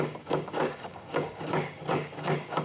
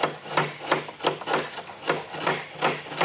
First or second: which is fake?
first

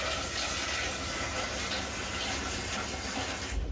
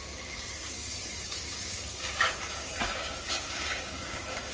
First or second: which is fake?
second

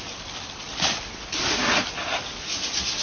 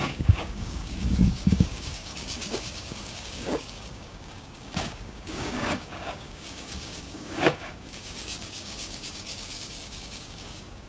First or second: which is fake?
second